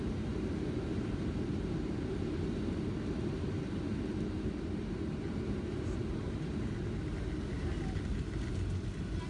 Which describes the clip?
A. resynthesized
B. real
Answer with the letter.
B